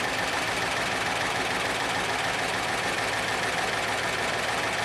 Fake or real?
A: fake